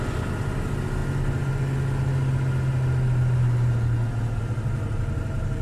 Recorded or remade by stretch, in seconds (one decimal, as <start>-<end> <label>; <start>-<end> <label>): 0.0-5.6 recorded